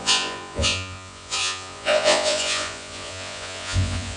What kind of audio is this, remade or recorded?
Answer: remade